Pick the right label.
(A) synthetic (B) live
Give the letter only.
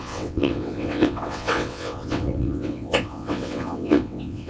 A